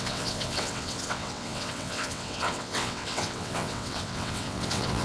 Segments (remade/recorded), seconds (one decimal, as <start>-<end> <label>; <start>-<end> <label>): 0.0-5.0 remade